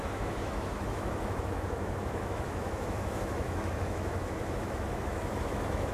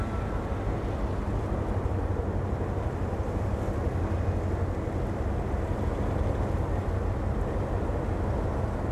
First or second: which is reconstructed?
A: first